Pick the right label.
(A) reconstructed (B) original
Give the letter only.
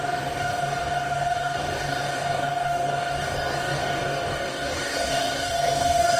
A